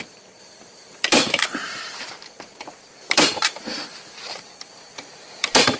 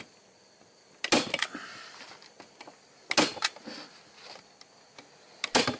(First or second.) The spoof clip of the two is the first